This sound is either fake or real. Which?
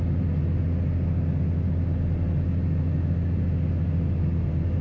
real